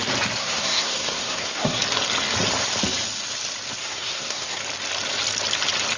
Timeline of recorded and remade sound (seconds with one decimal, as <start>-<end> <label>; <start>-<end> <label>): 0.0-0.4 recorded; 0.4-1.8 remade; 1.8-3.8 recorded; 3.8-4.6 remade; 4.6-6.0 recorded